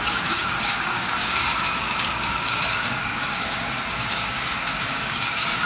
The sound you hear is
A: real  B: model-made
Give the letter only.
B